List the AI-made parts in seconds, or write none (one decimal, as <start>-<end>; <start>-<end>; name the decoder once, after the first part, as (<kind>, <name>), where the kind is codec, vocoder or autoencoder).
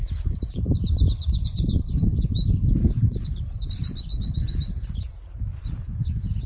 0.0-6.5 (vocoder, BigVGAN v2)